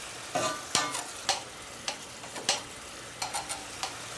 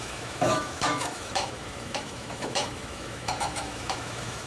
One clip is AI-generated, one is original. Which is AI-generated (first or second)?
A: second